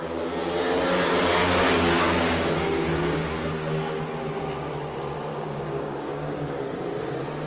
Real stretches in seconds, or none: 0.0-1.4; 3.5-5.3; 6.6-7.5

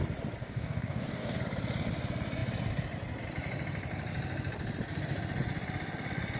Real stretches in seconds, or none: 0.0-0.4; 1.4-6.4

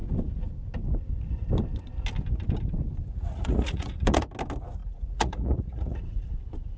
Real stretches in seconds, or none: 0.0-3.0; 4.3-4.8; 6.3-6.8